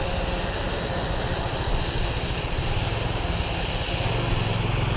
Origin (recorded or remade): recorded